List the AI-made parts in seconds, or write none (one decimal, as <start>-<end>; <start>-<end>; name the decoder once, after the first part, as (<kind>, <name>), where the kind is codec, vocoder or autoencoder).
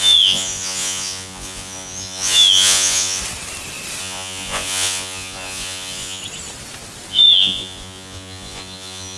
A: 0.0-3.2 (vocoder, Vocos); 4.0-6.2; 7.1-9.2